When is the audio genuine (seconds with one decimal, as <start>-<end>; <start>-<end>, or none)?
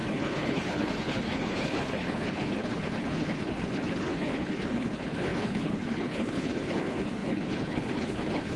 none